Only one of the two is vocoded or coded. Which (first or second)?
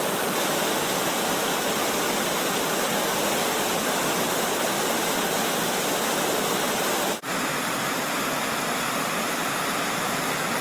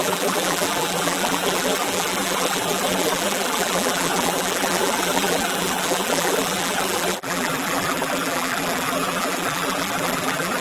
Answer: second